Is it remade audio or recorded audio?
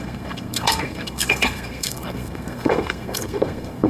remade